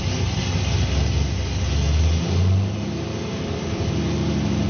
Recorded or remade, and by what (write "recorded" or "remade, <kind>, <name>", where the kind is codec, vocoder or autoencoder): recorded